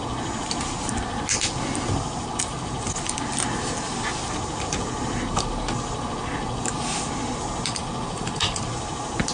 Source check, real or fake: real